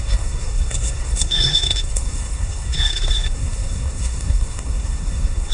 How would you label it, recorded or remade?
remade